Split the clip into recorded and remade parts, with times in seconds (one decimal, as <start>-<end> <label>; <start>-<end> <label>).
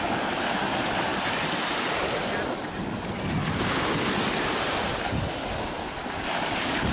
0.0-6.9 recorded